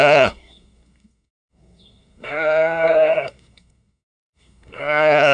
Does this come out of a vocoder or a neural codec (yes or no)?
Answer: yes